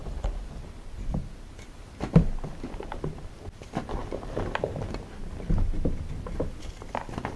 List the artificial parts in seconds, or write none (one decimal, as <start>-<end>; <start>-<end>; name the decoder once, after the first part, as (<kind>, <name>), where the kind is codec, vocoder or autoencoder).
0.0-4.0 (vocoder, BigVGAN v2); 6.6-7.4